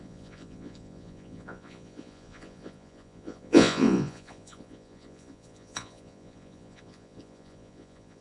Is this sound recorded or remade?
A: remade